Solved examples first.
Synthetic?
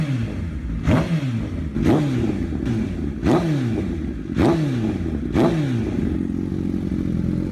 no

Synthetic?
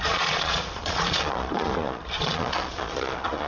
yes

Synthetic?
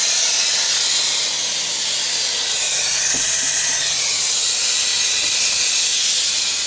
no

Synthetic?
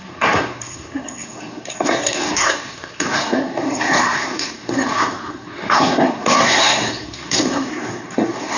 yes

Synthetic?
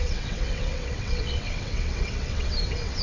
yes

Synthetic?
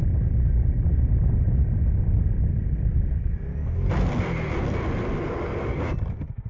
no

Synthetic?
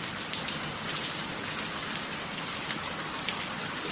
no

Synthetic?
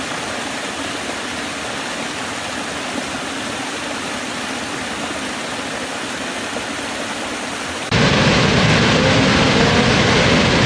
no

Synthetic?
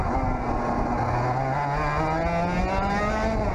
no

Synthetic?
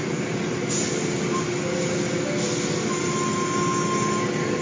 no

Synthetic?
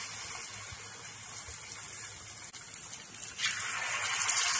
no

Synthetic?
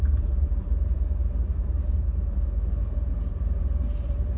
yes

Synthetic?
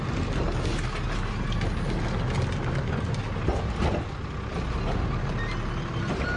no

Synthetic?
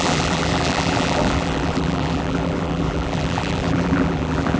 yes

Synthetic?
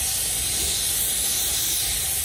no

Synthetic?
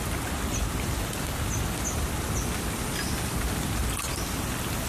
no